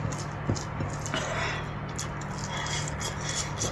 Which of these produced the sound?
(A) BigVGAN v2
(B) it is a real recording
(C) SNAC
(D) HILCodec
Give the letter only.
B